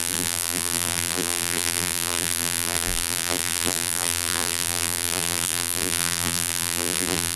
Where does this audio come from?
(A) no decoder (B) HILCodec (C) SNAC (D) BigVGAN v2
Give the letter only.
D